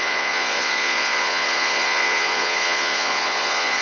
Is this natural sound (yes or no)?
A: no